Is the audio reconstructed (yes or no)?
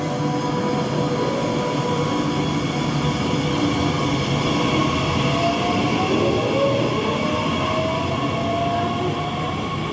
no